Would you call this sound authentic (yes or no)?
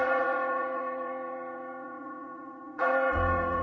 no